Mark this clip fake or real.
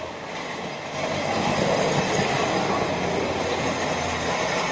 real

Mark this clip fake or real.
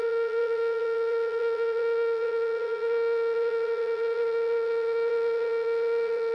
fake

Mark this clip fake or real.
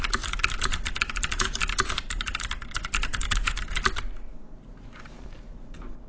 real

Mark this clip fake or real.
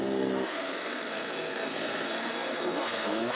fake